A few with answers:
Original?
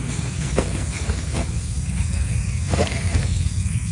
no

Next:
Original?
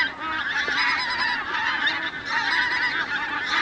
yes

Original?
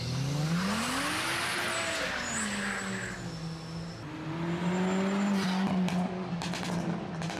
yes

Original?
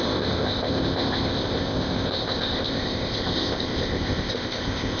no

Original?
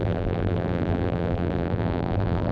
no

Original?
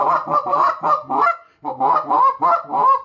yes